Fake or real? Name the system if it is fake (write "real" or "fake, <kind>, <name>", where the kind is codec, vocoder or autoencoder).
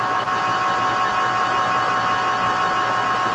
real